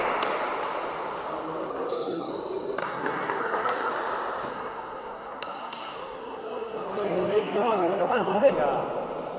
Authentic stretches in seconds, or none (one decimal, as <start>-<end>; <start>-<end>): 0.0-1.7; 2.3-2.8; 3.9-4.5; 8.5-9.4